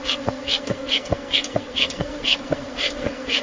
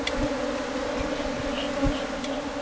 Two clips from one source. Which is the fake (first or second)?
first